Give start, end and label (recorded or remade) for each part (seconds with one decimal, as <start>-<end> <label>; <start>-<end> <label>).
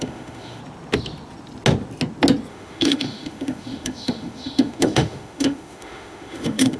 0.0-0.6 remade; 0.6-2.5 recorded; 2.5-6.8 remade